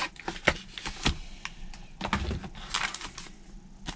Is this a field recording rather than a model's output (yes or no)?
yes